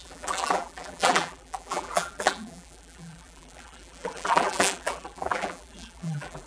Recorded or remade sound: remade